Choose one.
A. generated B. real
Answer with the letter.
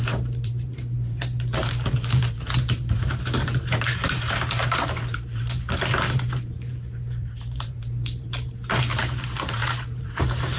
A